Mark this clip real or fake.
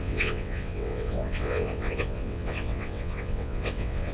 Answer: fake